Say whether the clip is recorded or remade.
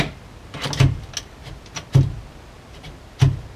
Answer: recorded